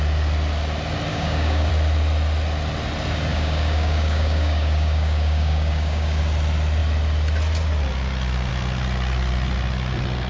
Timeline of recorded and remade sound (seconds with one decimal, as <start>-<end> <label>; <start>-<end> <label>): 0.0-1.1 recorded; 1.1-1.7 remade; 1.7-3.3 recorded; 3.3-6.2 remade; 6.2-10.3 recorded